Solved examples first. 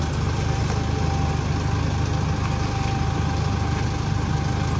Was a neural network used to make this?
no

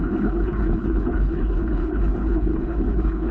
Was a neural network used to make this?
yes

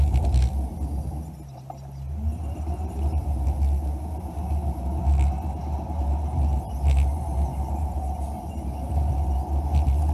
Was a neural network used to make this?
no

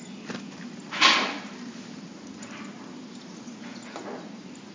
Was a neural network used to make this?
no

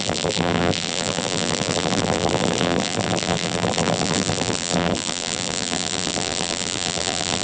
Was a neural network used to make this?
yes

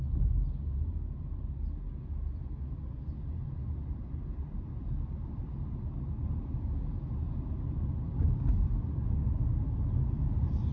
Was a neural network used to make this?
no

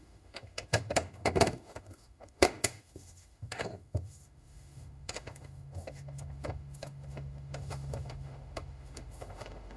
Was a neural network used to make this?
yes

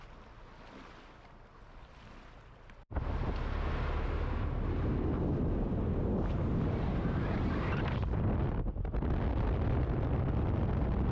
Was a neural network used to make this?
no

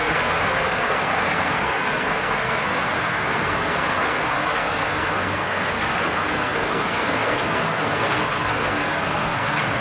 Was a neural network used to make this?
yes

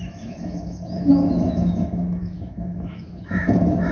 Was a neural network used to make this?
yes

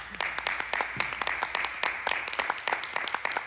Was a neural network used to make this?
no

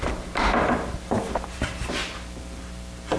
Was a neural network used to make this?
no